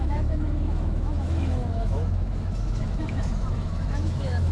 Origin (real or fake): fake